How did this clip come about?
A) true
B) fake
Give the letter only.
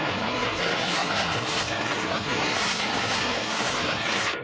B